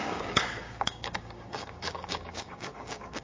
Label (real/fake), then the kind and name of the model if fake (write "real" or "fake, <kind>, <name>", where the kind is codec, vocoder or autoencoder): fake, codec, DAC